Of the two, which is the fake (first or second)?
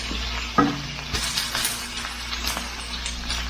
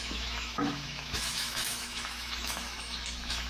second